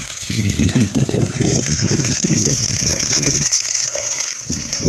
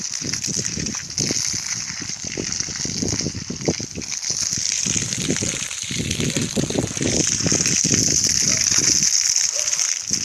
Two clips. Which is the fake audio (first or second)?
first